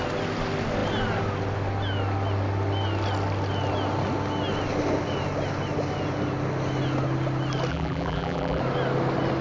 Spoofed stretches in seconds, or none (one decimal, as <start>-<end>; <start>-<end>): 7.7-8.6